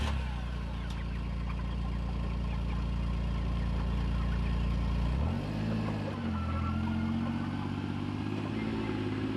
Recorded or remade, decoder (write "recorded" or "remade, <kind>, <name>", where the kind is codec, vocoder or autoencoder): recorded